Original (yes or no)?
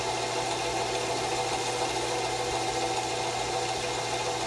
yes